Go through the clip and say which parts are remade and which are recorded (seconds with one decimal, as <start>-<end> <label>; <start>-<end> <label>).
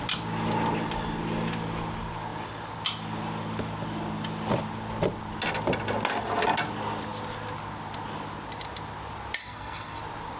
0.0-9.4 recorded; 9.4-10.0 remade; 10.0-10.4 recorded